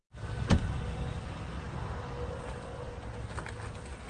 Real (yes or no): yes